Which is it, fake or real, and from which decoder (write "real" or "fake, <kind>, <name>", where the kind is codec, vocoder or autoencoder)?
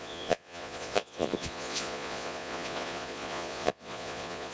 fake, vocoder, Vocos